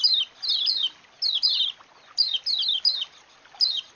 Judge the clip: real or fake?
real